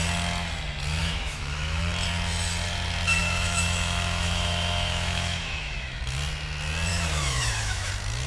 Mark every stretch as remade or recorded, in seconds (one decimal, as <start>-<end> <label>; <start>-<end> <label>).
0.0-1.0 recorded; 1.0-1.8 remade; 1.8-3.2 recorded; 3.2-6.0 remade; 6.0-6.9 recorded; 6.9-7.9 remade; 7.9-8.3 recorded